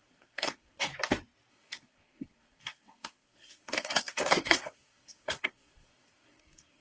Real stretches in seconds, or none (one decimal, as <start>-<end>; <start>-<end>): 0.9-1.5